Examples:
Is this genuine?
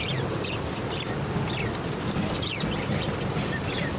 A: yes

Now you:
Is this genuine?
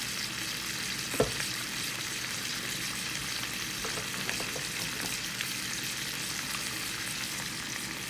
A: no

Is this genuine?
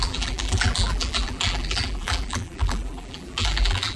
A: no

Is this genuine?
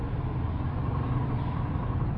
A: yes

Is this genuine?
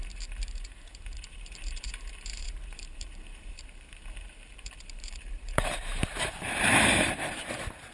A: no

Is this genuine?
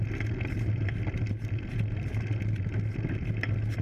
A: yes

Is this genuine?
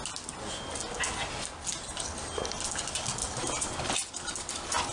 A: yes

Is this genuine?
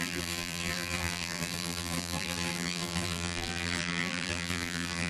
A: no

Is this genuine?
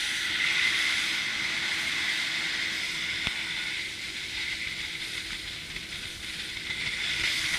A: yes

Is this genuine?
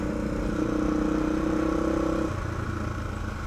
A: yes